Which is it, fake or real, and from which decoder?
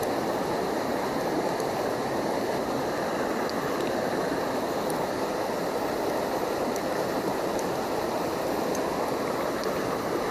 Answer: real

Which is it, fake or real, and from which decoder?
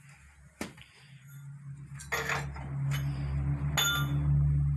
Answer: real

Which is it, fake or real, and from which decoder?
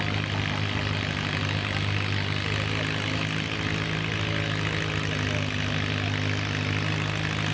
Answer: real